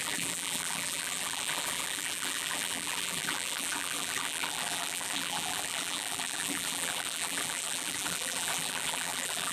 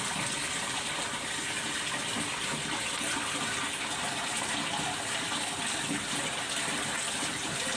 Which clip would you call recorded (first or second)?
second